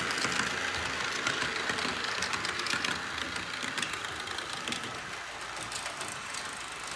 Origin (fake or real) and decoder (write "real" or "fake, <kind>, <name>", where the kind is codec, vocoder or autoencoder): real